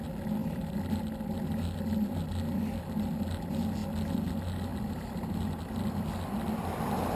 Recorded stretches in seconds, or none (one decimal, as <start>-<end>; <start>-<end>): 0.0-0.4; 0.9-4.7; 5.6-7.2